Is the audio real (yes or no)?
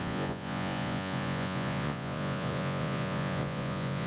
no